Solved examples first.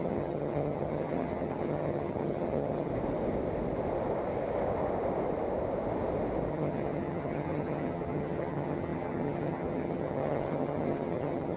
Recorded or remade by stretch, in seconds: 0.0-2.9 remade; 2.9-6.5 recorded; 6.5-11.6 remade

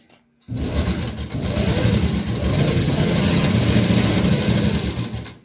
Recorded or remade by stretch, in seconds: 0.0-2.5 recorded; 2.5-3.5 remade; 3.5-5.4 recorded

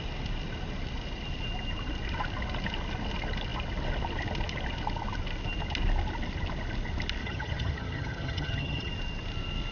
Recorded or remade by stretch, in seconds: 0.0-7.2 recorded; 7.2-8.9 remade; 8.9-9.7 recorded

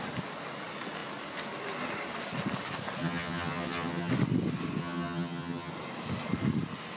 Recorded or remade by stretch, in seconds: 0.0-3.0 recorded; 3.0-4.1 remade; 4.1-4.8 recorded; 4.8-5.7 remade; 5.7-7.0 recorded

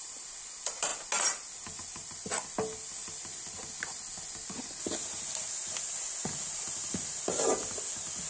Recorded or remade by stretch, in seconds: 0.0-8.3 recorded

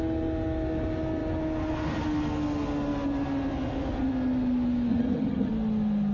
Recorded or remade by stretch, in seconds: 0.0-4.9 recorded; 4.9-5.5 remade; 5.5-6.1 recorded